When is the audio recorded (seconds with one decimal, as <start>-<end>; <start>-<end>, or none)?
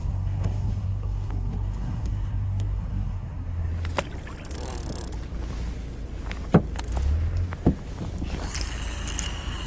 3.7-9.7